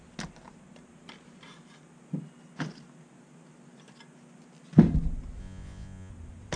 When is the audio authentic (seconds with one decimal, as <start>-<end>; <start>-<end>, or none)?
0.0-5.4; 6.1-6.6